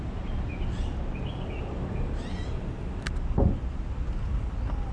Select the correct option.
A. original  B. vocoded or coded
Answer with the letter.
A